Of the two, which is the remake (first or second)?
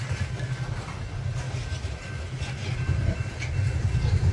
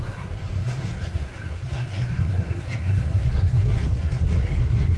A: second